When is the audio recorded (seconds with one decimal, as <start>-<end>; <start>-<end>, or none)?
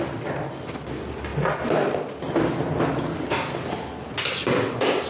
0.0-5.1